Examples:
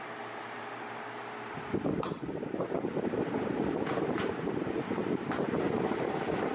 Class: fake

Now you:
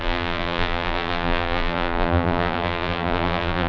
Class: fake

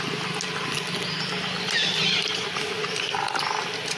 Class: real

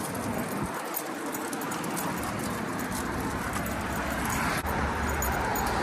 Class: real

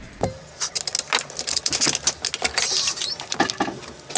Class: real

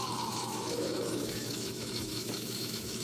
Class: fake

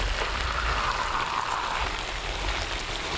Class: real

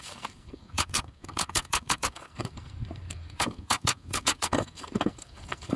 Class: fake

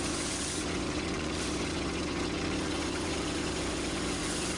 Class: fake